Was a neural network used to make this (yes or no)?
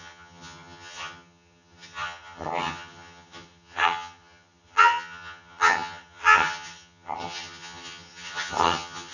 yes